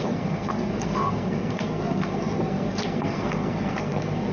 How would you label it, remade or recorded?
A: remade